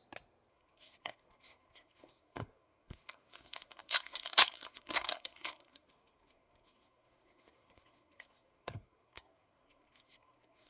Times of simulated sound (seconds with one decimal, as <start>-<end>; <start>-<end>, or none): 0.5-10.7